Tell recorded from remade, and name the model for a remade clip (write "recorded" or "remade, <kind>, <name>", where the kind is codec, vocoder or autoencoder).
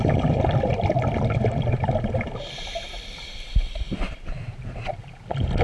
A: recorded